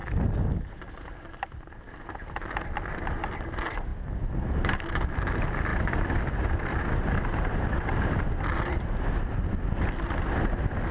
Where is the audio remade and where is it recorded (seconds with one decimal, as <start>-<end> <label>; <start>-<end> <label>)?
0.0-5.7 recorded; 5.7-9.2 remade; 9.2-10.9 recorded